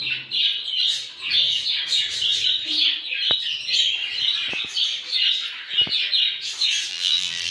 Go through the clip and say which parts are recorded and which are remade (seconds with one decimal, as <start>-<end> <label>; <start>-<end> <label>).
0.0-6.9 recorded; 6.9-7.5 remade